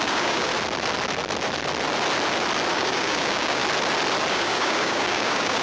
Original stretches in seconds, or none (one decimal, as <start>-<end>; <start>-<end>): 0.5-2.7; 3.6-4.3